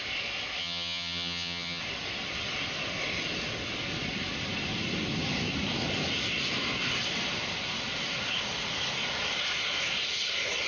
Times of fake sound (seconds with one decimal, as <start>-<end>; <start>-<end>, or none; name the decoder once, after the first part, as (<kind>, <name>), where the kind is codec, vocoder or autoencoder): 0.6-1.8 (vocoder, HiFi-GAN)